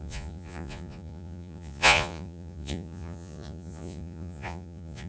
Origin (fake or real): fake